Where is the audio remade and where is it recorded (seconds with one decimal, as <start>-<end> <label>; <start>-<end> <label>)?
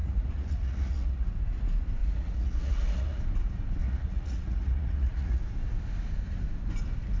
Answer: 0.0-1.3 remade; 1.3-2.0 recorded; 2.0-3.2 remade; 3.2-3.8 recorded; 3.8-5.4 remade; 5.4-7.2 recorded